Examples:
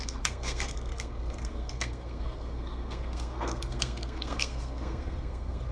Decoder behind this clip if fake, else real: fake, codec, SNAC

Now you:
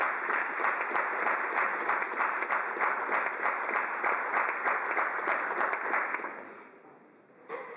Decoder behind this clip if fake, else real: real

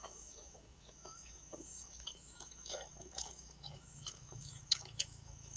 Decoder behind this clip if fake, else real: fake, autoencoder, DAC-VAE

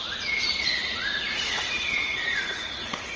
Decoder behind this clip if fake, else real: fake, vocoder, Vocos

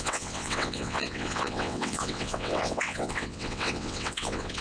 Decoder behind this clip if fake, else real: fake, vocoder, WaveNeXt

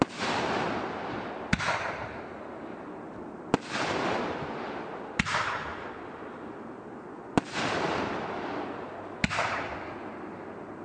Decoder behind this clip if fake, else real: real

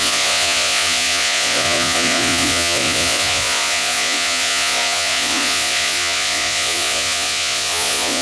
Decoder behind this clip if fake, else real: fake, vocoder, Vocos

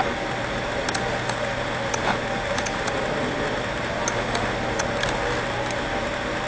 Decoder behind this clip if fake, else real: real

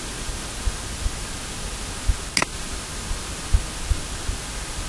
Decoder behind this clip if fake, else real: real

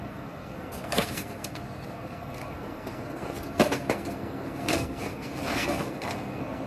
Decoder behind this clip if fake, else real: fake, codec, SNAC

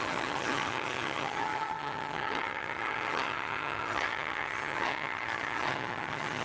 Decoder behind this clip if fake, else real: fake, vocoder, HiFi-GAN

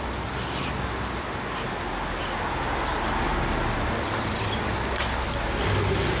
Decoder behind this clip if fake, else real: real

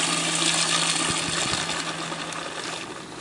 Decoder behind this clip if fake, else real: real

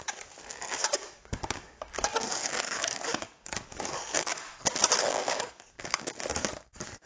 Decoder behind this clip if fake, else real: fake, codec, DAC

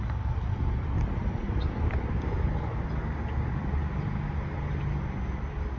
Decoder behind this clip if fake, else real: real